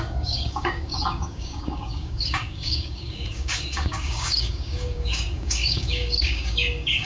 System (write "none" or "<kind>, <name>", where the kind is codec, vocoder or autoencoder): codec, DAC